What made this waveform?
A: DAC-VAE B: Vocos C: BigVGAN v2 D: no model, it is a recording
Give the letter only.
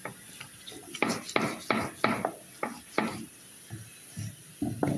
D